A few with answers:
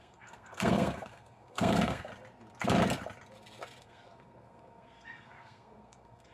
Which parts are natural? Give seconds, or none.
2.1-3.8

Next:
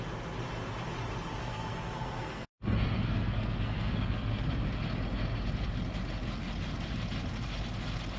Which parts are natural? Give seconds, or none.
0.0-1.4; 4.5-8.2